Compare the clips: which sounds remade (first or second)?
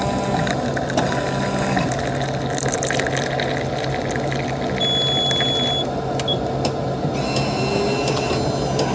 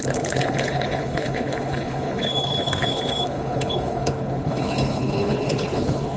second